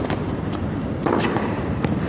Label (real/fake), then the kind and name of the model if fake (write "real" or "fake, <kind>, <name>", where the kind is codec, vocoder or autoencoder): real